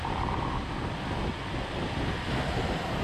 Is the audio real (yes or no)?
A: yes